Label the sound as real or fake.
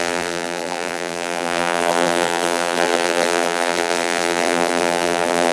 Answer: fake